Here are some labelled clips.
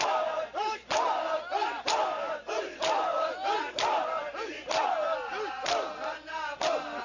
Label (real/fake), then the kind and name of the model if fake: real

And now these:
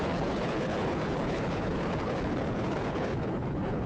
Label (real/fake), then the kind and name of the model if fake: fake, codec, HILCodec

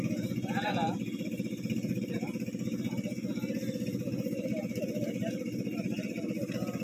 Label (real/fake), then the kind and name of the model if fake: fake, vocoder, BigVGAN v2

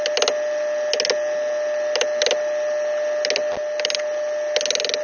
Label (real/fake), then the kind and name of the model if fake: real